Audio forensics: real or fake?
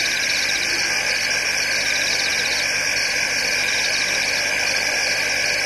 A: real